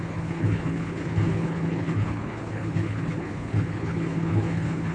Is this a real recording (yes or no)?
no